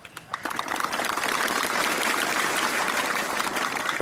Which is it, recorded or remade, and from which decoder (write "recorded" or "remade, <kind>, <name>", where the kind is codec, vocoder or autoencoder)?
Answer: remade, vocoder, BigVGAN v2